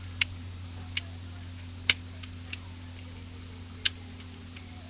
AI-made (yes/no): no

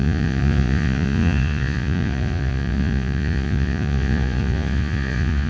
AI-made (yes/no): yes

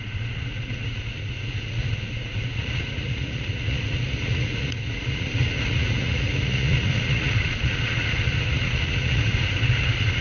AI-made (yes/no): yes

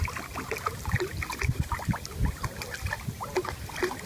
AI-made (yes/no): no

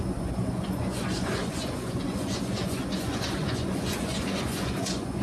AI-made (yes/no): yes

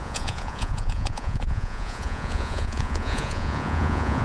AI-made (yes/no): yes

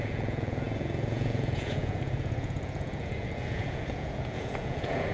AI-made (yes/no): yes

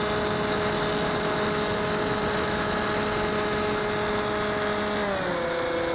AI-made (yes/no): no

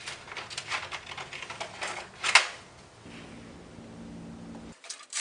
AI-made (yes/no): no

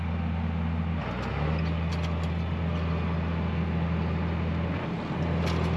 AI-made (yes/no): no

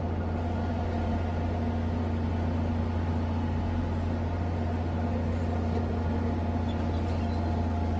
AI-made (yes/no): no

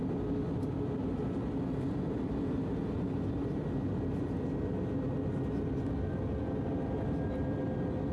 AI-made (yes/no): no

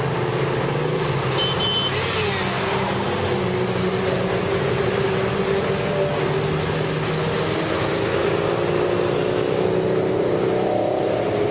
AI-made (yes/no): no